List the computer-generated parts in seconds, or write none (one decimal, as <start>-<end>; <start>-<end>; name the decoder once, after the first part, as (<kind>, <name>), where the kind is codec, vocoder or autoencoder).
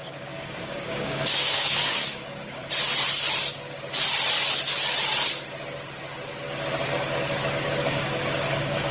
0.0-2.6 (codec, DAC); 7.7-8.9